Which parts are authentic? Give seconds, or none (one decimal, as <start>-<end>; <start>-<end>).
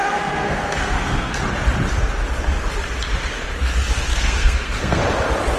1.4-4.1; 5.0-5.6